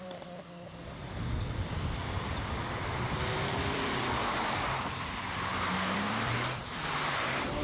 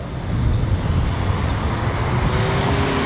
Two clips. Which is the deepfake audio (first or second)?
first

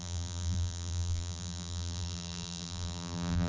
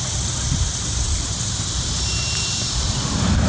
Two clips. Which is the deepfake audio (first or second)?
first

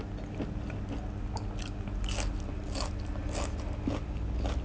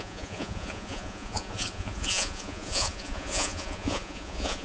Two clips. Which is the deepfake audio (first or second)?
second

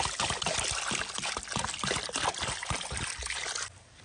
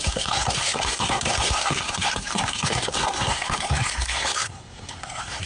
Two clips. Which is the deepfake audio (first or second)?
second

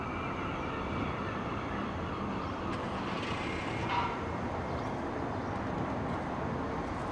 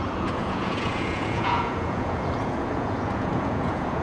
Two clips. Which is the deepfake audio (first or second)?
second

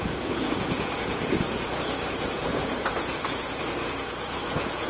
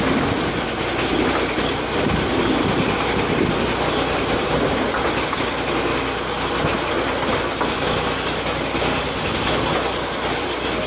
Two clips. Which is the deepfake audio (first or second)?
first